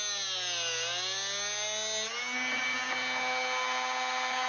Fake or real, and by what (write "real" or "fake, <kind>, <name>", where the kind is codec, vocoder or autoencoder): real